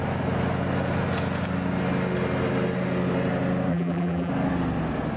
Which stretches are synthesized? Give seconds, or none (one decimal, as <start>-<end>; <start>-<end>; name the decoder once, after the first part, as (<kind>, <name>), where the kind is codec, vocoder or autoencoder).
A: 3.7-4.3 (vocoder, BigVGAN v2)